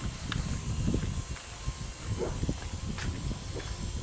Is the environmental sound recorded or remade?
recorded